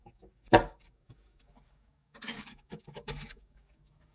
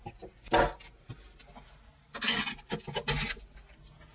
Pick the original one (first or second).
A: second